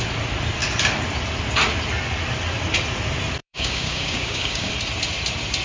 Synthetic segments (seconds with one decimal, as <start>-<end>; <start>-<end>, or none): 3.4-4.7